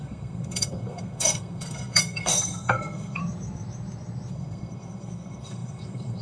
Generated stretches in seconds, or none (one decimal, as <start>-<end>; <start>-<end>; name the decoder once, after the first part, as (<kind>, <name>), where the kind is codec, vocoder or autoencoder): 0.0-3.2 (codec, SNAC); 4.3-6.2